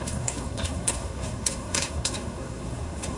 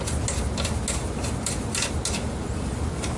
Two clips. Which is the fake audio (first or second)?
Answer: first